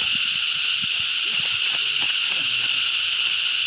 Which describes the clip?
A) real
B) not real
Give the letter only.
A